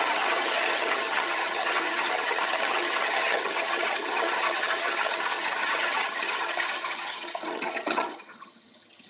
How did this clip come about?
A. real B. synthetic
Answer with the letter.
B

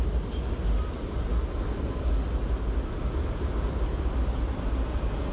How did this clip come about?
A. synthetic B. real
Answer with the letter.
B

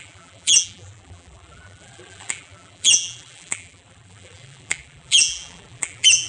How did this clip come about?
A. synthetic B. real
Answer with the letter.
A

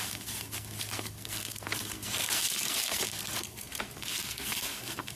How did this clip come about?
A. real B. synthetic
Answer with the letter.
B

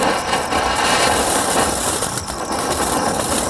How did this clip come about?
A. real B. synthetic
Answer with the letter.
A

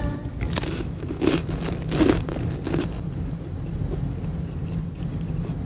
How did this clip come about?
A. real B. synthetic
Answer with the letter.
A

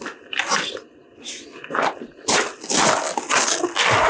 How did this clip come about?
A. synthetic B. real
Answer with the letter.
B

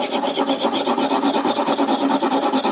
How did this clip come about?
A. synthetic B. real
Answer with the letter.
B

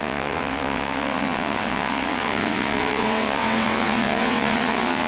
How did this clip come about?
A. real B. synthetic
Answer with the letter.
B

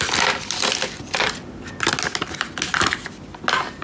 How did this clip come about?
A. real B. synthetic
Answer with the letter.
A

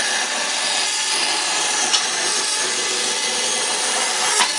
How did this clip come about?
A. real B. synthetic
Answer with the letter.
A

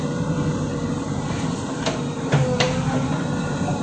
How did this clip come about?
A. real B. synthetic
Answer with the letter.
B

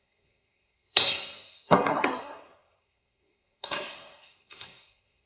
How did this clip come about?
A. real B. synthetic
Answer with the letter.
B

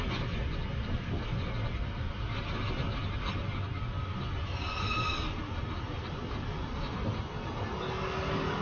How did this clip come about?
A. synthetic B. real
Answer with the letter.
B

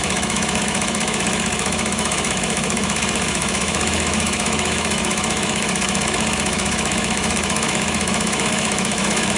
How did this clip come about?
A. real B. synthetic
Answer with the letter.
B